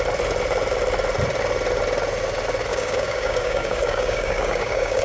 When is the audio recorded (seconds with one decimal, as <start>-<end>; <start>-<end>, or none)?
0.0-2.7